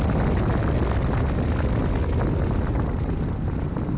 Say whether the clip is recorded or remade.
recorded